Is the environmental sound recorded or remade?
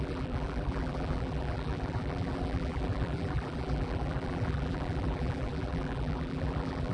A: remade